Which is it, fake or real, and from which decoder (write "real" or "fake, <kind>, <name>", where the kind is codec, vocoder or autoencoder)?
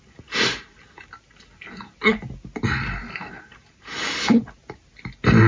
real